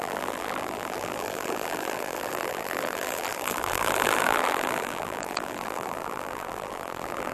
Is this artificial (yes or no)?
yes